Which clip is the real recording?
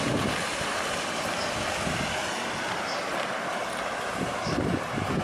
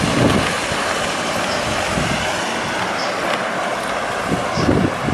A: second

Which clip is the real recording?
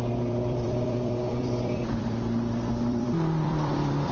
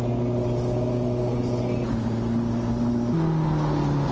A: second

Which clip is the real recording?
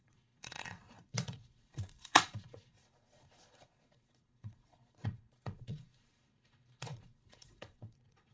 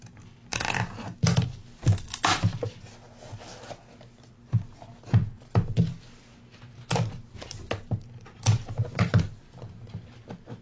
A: second